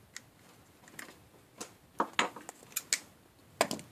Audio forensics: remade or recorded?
recorded